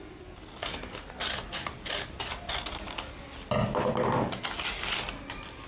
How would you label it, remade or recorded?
recorded